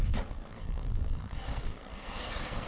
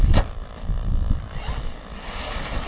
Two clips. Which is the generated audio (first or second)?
first